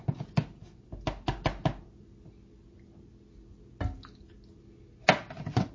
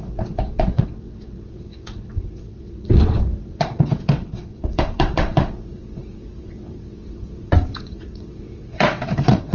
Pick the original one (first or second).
first